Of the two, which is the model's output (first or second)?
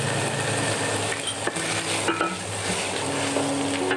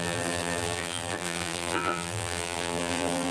second